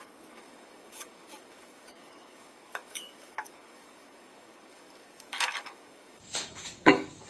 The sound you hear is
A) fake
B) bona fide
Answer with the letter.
A